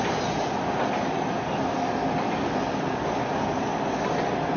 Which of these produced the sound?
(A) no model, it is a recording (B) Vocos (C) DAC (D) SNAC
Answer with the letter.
A